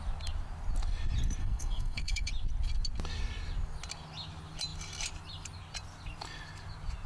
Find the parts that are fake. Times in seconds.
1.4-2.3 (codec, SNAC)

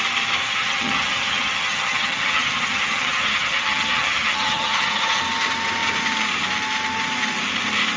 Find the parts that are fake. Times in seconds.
0.4-5.2 (vocoder, HiFi-GAN)

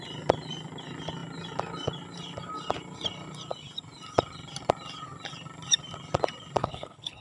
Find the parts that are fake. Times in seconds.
6.6-7.2 (codec, HILCodec)

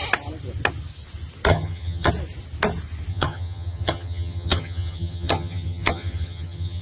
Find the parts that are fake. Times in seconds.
1.5-2.1 (vocoder, HiFi-GAN); 3.1-6.8

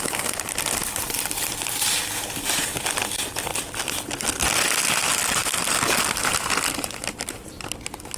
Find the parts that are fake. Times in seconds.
none